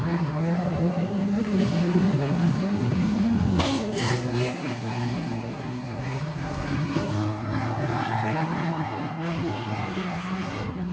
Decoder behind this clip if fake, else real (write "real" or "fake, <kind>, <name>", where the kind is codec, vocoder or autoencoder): fake, codec, SNAC